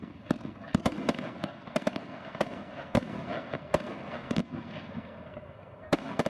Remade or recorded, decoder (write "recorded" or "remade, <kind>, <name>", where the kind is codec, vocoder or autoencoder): remade, codec, SNAC